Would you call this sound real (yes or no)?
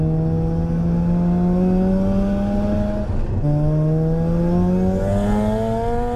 yes